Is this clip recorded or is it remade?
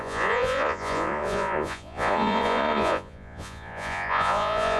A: remade